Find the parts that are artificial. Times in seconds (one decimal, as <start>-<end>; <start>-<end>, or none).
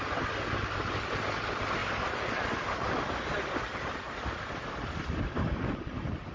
none